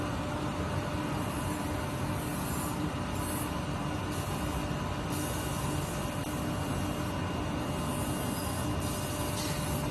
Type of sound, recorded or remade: recorded